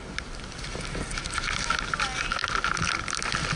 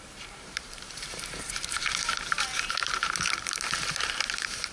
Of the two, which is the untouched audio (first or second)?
first